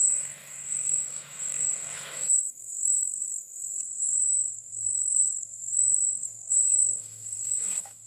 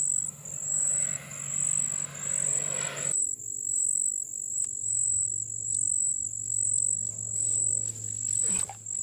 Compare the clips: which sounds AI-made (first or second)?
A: first